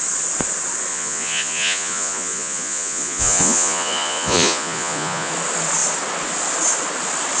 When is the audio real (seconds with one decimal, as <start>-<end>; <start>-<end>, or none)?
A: 0.0-0.9; 5.3-7.4